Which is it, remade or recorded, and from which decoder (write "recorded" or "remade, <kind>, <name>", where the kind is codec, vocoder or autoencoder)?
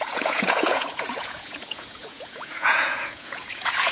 remade, vocoder, Vocos